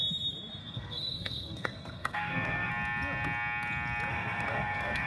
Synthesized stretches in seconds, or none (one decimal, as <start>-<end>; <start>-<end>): 0.6-2.7; 4.1-5.1